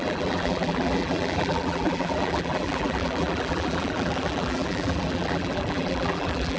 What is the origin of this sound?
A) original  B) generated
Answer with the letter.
B